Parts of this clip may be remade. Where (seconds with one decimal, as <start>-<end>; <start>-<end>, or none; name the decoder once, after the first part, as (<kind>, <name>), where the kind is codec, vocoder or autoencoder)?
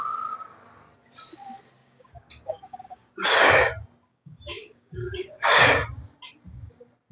1.8-3.1 (codec, DAC); 4.1-5.7